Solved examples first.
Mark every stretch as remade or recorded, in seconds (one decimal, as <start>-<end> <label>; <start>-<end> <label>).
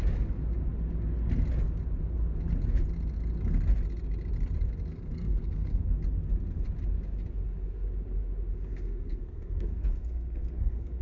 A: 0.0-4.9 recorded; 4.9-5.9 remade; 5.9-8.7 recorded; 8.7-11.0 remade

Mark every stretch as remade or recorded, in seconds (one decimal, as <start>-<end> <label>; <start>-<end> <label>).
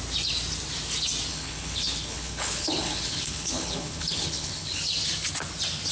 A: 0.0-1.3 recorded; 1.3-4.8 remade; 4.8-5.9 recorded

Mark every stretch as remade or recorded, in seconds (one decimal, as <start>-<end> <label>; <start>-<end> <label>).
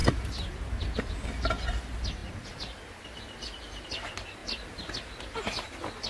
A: 0.0-6.1 recorded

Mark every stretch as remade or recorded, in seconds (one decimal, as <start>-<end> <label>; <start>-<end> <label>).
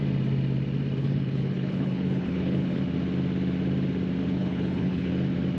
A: 0.0-1.0 recorded; 1.0-2.8 remade; 2.8-4.2 recorded; 4.2-5.1 remade; 5.1-5.6 recorded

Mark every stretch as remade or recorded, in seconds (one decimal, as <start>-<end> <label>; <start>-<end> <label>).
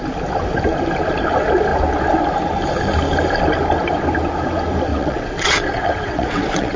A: 0.0-4.9 recorded; 4.9-6.8 remade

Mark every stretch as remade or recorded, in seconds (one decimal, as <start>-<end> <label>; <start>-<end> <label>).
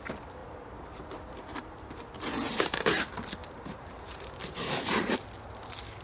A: 0.0-0.4 recorded; 0.4-1.6 remade; 1.6-2.5 recorded; 2.5-3.0 remade; 3.0-3.4 recorded; 3.4-5.0 remade; 5.0-6.0 recorded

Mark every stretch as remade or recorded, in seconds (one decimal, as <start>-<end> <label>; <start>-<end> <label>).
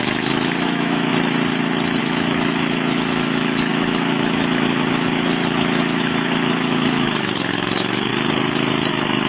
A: 0.0-1.1 remade; 1.1-2.0 recorded; 2.0-8.1 remade; 8.1-8.9 recorded; 8.9-9.3 remade